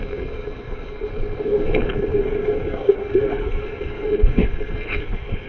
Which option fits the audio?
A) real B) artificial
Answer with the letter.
B